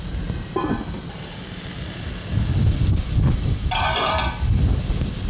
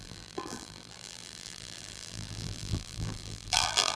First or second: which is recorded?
first